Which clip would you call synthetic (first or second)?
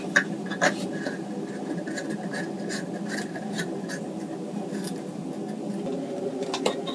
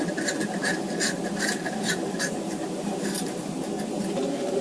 second